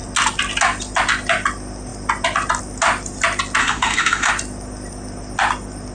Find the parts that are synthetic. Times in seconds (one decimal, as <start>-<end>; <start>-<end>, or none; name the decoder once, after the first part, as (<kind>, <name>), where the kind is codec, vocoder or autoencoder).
3.6-4.3 (autoencoder, DAC-VAE)